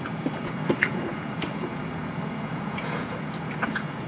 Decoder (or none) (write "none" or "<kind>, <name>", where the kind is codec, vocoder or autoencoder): vocoder, Vocos